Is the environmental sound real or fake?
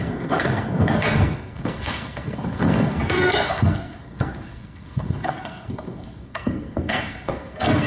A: fake